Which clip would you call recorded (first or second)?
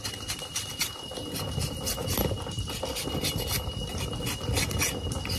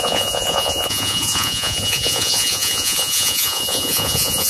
first